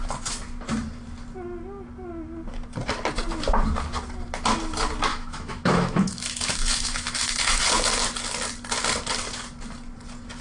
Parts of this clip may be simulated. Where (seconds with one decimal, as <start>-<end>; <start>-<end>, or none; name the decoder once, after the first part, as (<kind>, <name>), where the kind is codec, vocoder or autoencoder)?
5.1-7.6 (autoencoder, DAC-VAE)

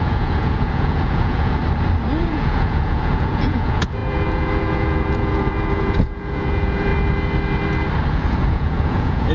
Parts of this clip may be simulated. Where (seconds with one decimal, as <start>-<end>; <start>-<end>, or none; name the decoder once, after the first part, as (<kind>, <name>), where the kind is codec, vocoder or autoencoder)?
0.0-1.6 (vocoder, Vocos); 2.2-6.9; 8.1-9.3

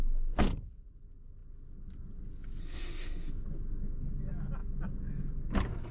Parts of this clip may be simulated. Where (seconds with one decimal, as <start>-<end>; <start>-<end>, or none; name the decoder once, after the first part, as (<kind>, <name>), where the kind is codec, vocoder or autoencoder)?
2.6-3.3 (codec, SNAC)

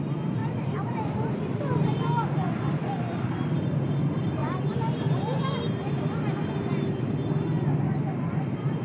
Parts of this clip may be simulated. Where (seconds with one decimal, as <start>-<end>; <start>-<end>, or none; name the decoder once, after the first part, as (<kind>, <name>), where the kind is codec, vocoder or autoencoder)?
0.4-1.3 (vocoder, BigVGAN v2); 4.4-7.0

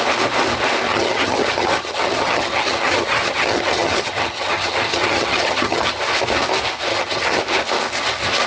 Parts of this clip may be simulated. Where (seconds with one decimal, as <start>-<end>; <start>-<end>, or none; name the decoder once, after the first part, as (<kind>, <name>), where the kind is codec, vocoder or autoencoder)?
0.9-6.0 (vocoder, HiFi-GAN); 6.9-7.4

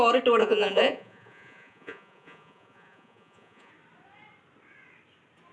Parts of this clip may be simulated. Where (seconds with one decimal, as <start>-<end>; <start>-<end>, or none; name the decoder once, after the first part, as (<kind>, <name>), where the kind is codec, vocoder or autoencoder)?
0.4-3.7 (vocoder, Vocos)

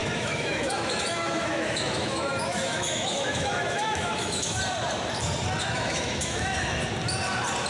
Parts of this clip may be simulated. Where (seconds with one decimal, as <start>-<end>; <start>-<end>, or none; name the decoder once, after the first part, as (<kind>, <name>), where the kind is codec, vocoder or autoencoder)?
0.0-4.6 (autoencoder, DAC-VAE); 5.6-6.8